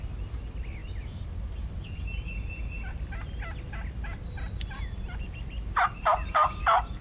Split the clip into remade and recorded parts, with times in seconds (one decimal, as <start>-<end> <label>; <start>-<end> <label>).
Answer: 0.0-7.0 recorded